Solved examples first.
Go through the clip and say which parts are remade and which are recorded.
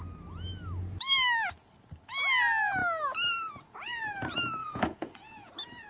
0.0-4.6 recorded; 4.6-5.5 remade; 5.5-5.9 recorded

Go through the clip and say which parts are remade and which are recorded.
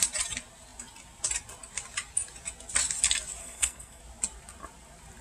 0.0-3.4 recorded; 3.4-4.0 remade; 4.0-5.2 recorded